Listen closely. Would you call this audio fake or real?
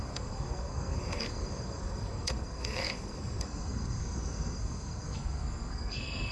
fake